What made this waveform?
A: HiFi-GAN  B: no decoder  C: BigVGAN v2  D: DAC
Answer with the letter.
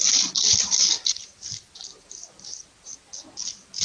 C